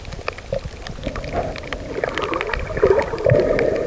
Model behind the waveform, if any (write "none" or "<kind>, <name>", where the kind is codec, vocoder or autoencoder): none